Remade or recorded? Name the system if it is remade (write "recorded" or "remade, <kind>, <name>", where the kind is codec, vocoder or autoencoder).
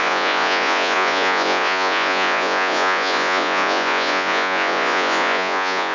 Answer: remade, vocoder, Vocos